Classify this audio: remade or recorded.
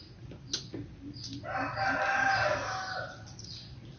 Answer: recorded